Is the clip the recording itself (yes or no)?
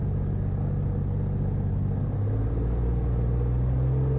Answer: yes